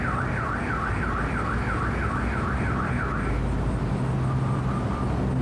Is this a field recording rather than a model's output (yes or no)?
yes